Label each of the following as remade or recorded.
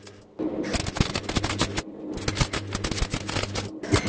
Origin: recorded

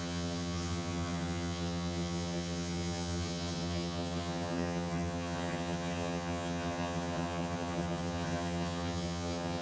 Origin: remade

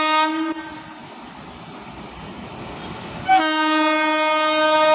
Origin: recorded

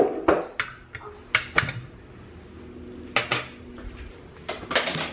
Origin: recorded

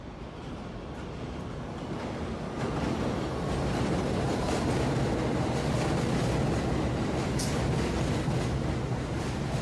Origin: recorded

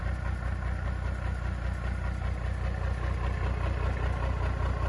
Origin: recorded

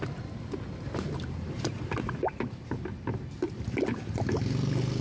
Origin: recorded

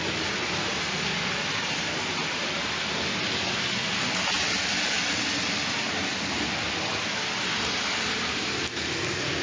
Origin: recorded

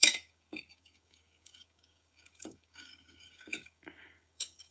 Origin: remade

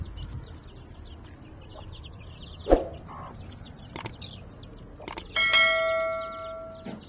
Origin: recorded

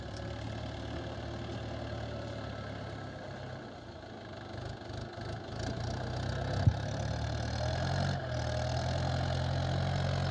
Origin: recorded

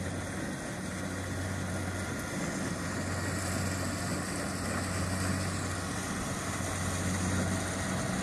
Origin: recorded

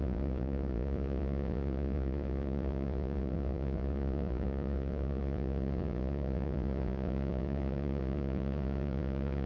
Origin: remade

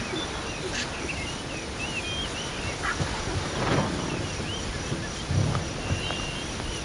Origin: recorded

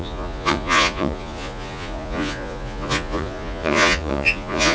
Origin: remade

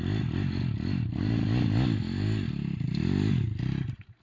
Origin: recorded